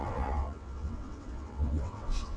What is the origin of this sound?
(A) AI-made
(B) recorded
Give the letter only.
A